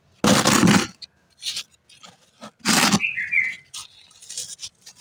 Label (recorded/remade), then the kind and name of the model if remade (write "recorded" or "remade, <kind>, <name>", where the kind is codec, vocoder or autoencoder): recorded